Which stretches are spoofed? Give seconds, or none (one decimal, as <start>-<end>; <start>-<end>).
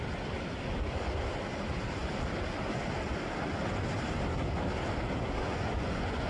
5.4-6.3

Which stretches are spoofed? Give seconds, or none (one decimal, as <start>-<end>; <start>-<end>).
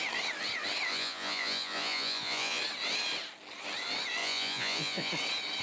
0.9-2.6; 4.2-5.1